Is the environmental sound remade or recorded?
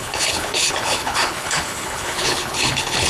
remade